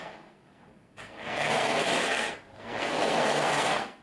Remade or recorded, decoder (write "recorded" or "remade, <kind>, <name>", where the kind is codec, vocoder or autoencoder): remade, codec, SNAC